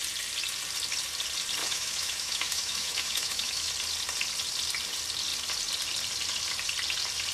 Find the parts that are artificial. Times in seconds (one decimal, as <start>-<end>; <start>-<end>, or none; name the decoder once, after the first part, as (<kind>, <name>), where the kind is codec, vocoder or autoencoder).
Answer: 1.6-3.7 (autoencoder, DAC-VAE)